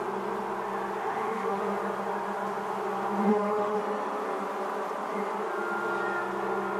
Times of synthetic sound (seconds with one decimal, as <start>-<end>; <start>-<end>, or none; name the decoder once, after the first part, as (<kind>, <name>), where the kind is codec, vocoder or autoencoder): 1.0-1.6 (autoencoder, DAC-VAE); 3.3-3.8